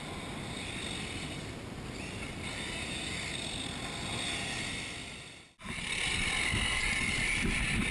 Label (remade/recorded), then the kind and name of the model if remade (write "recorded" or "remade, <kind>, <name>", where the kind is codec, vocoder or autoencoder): recorded